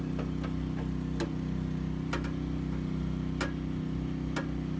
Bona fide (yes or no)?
yes